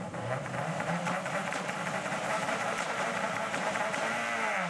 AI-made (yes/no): yes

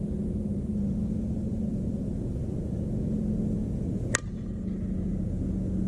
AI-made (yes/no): no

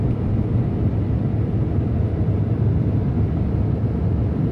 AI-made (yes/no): no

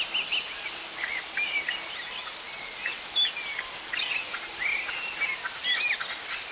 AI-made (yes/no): no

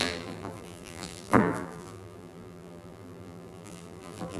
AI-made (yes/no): yes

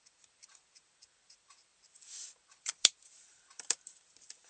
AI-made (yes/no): yes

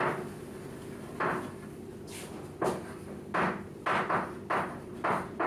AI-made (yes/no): no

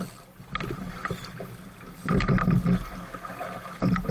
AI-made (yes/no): no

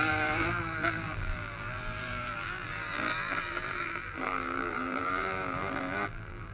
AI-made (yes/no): yes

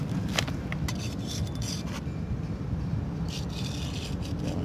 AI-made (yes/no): no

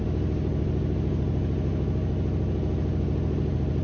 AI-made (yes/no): no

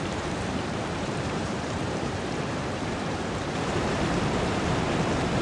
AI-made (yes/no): yes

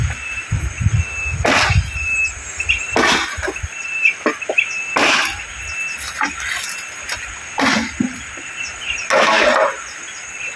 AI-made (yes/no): no